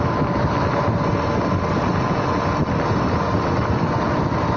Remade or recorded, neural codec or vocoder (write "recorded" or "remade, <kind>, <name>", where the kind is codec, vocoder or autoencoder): recorded